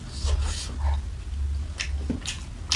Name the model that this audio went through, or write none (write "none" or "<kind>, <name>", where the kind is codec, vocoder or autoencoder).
none